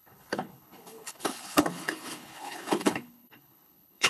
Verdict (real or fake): fake